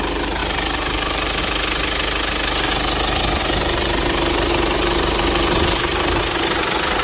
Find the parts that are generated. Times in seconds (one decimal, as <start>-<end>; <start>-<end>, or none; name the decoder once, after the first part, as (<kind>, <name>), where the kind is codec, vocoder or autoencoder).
0.4-1.4 (vocoder, BigVGAN v2); 3.4-6.2